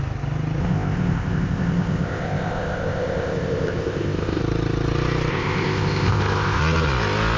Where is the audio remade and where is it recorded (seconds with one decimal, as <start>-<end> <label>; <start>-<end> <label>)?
0.0-0.6 recorded; 0.6-4.4 remade; 4.4-5.3 recorded; 5.3-6.6 remade; 6.6-7.4 recorded